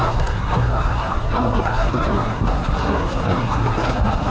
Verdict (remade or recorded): remade